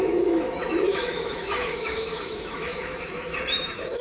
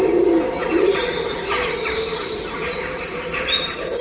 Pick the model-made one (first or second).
first